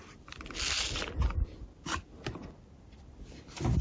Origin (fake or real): real